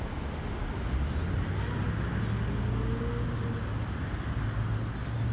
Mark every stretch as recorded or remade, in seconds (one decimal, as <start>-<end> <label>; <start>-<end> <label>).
0.0-5.3 recorded